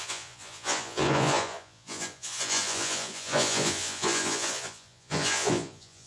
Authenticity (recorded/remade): remade